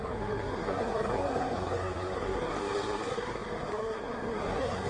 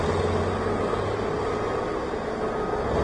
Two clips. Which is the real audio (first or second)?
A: second